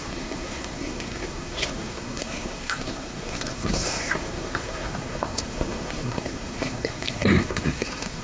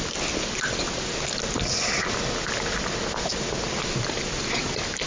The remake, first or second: first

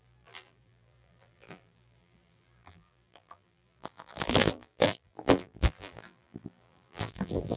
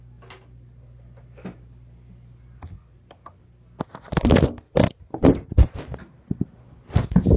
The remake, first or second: first